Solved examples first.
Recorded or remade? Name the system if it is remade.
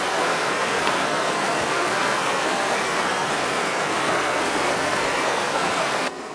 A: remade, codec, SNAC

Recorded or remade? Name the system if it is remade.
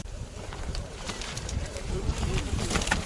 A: remade, vocoder, BigVGAN v2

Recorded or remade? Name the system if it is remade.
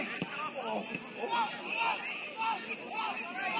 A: recorded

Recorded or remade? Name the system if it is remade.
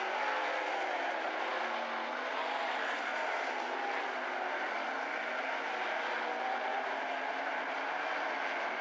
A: recorded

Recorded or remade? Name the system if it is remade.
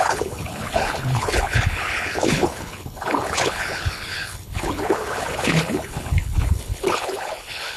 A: remade, codec, HILCodec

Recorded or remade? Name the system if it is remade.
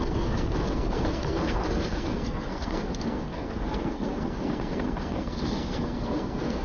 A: remade, codec, SNAC